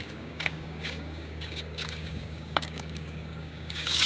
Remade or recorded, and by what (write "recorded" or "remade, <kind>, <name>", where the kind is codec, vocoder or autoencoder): remade, codec, DAC